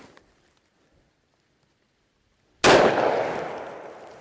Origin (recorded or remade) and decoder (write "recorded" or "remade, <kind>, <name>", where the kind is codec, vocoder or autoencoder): recorded